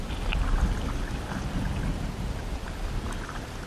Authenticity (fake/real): real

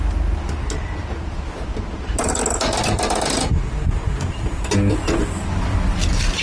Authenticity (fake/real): real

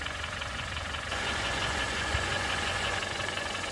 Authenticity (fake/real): fake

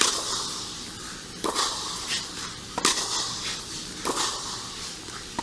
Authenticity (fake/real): real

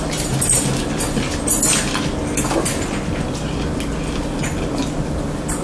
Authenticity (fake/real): real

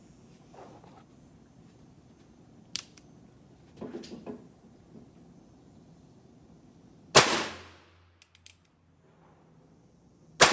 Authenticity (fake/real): real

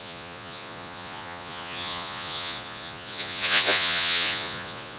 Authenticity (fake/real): fake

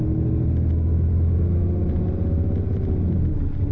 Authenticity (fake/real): real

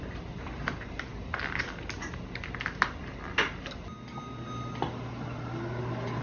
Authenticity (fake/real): real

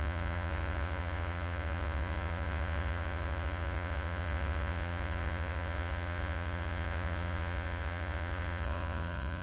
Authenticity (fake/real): fake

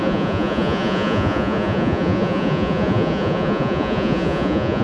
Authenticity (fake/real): fake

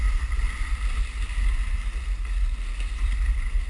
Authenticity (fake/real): real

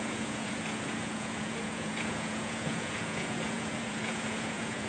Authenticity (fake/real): fake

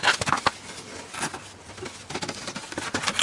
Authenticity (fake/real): real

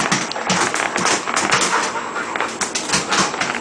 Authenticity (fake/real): real